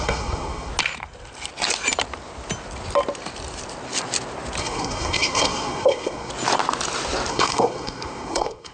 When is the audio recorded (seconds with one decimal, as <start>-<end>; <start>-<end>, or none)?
0.7-4.6; 6.3-7.3